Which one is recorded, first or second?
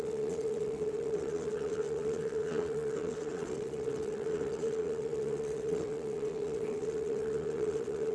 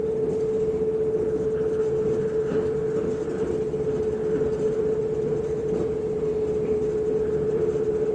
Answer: second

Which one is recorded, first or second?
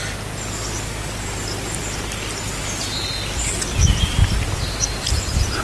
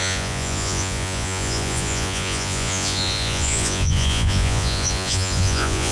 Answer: first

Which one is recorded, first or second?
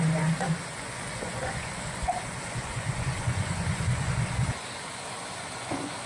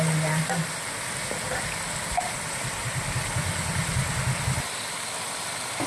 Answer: second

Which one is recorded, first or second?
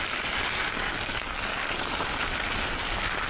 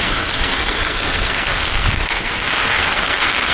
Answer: first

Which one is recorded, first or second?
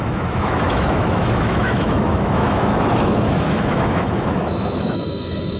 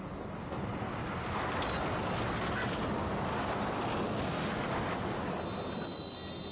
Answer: second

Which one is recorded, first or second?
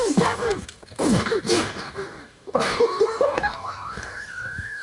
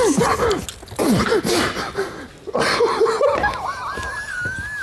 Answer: second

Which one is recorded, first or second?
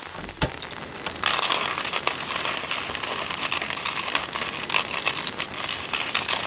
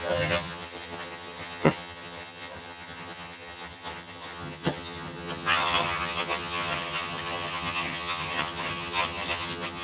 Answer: first